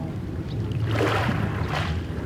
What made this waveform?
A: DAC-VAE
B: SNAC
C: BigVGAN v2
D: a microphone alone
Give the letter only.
C